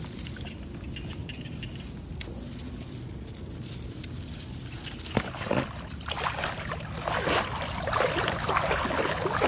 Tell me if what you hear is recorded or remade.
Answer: recorded